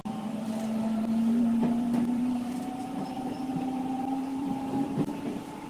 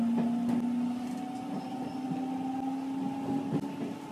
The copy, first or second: first